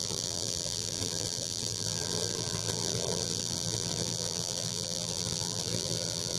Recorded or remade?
remade